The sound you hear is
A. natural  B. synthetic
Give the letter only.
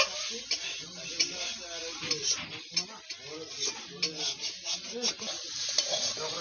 A